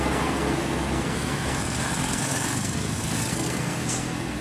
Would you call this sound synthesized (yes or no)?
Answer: yes